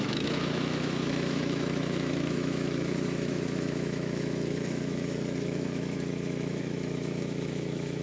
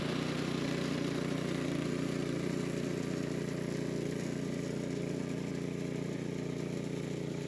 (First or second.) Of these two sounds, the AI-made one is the first